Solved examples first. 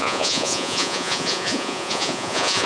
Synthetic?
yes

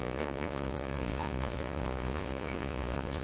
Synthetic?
yes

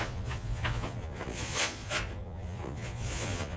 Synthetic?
yes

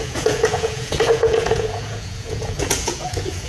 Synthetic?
yes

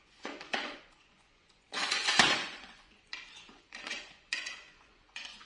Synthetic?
yes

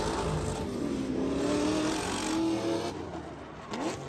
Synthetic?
no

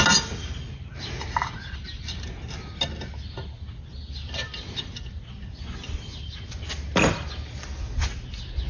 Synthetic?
no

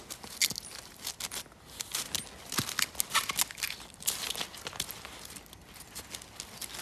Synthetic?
no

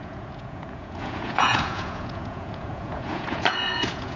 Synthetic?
yes